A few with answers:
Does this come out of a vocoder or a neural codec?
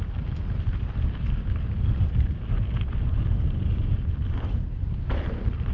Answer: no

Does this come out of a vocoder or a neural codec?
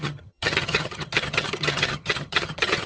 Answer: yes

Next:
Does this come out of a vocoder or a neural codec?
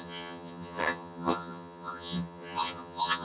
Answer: yes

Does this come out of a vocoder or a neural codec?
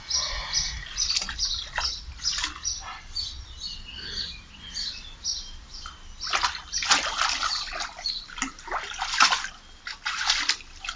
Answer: no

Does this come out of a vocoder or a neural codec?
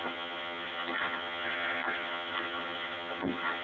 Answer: yes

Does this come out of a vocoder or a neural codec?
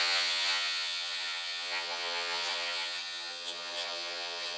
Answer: yes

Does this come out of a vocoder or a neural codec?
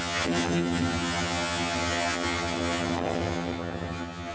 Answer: yes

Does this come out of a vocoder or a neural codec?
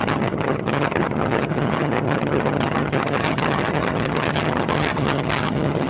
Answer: yes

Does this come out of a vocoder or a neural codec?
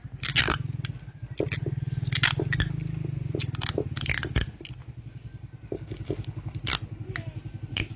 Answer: no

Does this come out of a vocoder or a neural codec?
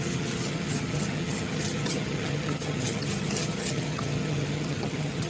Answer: yes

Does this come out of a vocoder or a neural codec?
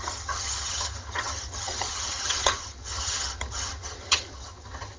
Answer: yes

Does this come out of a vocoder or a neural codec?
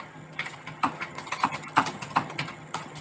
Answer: yes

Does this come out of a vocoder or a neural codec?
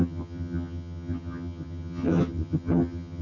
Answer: yes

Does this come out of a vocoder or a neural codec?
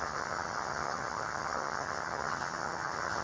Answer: yes